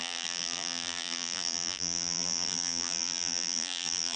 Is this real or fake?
fake